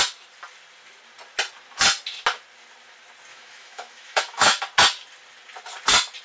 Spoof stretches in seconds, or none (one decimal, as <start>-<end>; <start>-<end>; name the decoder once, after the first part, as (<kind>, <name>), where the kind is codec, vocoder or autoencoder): 3.3-4.6 (autoencoder, DAC-VAE)